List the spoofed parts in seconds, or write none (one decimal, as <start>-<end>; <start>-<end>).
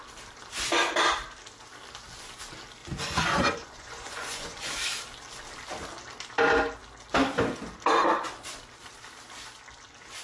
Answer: 2.8-4.7